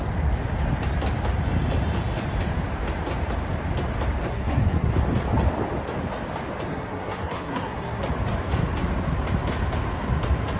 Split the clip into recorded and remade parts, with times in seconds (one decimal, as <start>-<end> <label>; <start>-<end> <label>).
0.0-4.3 recorded; 4.3-4.9 remade; 4.9-6.7 recorded; 6.7-8.0 remade; 8.0-10.6 recorded